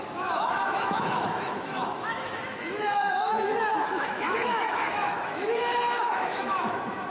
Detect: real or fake fake